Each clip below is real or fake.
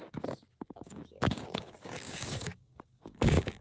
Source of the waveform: fake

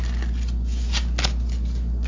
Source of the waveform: real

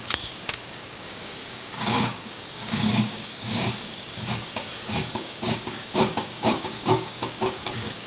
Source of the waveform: fake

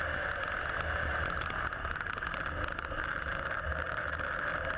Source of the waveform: real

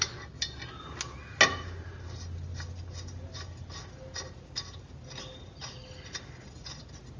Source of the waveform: real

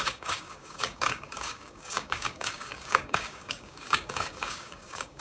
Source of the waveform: fake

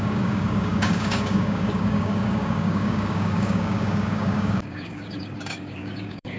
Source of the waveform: fake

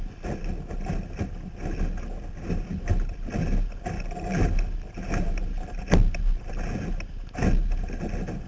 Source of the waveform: real